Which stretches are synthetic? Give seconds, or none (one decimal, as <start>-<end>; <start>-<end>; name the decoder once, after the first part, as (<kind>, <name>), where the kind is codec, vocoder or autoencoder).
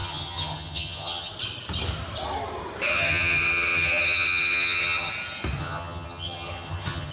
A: 0.0-1.3 (vocoder, HiFi-GAN); 2.9-5.1; 5.6-7.1